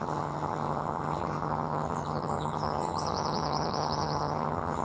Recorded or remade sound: remade